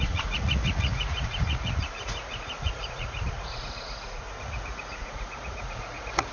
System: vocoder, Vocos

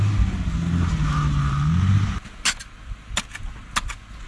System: none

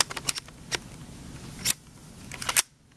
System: none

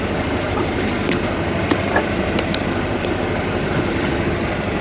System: vocoder, BigVGAN v2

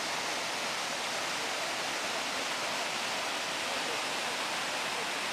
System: none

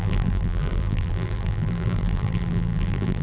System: vocoder, BigVGAN v2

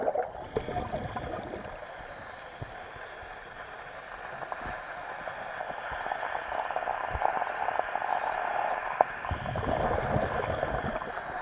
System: none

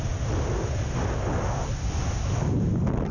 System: none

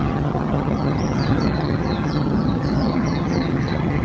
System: vocoder, HiFi-GAN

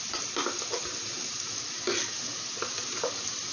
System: none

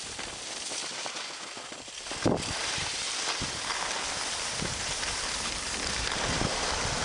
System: none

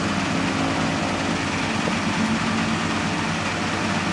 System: none